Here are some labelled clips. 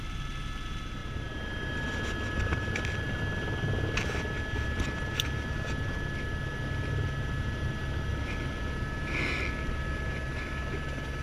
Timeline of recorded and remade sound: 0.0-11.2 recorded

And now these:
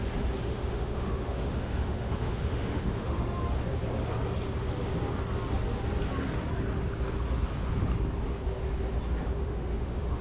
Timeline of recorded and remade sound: 0.0-0.4 recorded; 0.4-3.4 remade; 3.4-9.4 recorded; 9.4-10.2 remade

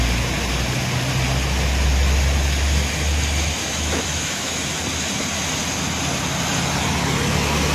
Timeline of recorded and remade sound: 0.0-3.6 recorded; 3.6-4.7 remade; 4.7-7.7 recorded

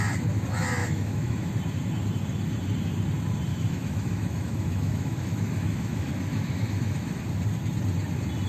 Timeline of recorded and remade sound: 0.0-0.8 recorded; 0.8-1.5 remade; 1.5-3.5 recorded; 3.5-7.2 remade; 7.2-8.5 recorded